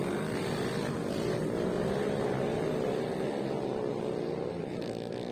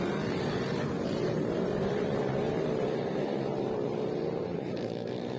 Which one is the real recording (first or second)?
first